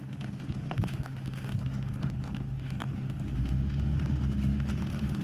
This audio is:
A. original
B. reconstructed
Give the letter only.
B